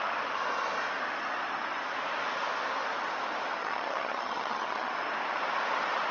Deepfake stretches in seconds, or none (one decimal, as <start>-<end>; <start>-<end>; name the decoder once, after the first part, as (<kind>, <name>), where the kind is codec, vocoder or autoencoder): 3.6-4.9 (vocoder, HiFi-GAN)

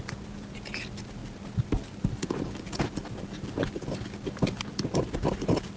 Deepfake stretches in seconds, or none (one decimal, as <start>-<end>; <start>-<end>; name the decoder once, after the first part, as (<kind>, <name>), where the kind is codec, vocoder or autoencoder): none